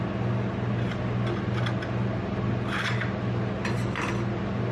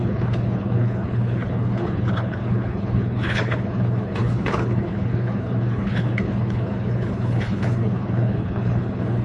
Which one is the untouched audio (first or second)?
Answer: first